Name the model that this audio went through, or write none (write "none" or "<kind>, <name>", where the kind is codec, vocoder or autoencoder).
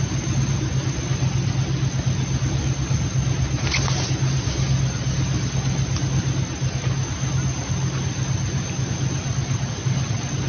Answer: none